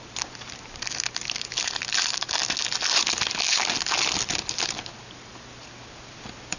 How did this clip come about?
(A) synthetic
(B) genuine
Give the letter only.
B